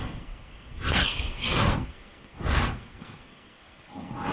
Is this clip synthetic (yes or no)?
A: yes